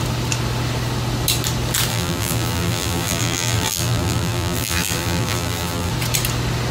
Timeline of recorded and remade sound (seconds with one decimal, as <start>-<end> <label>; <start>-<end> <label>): 0.0-1.9 recorded; 1.9-5.9 remade; 5.9-6.7 recorded